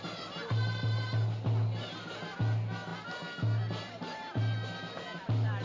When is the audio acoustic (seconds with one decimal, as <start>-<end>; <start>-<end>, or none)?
0.0-5.6